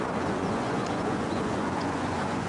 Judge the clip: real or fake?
fake